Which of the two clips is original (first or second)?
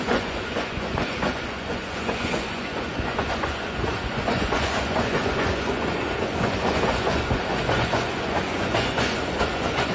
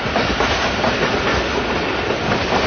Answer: second